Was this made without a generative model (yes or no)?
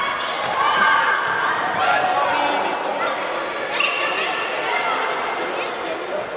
yes